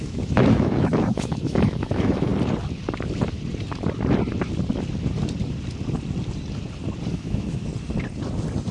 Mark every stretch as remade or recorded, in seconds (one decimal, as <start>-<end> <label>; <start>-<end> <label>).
0.0-2.3 remade; 2.3-7.1 recorded; 7.1-7.7 remade; 7.7-8.7 recorded